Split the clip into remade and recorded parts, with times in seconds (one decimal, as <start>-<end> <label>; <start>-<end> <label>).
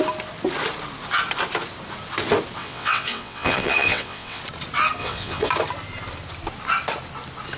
0.0-2.6 recorded; 2.6-4.4 remade; 4.4-5.0 recorded; 5.0-5.5 remade; 5.5-7.6 recorded